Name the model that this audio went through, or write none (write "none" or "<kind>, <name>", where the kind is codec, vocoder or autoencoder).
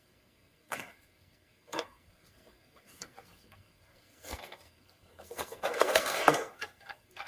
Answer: codec, SNAC